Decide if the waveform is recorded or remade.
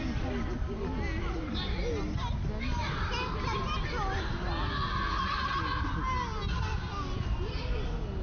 recorded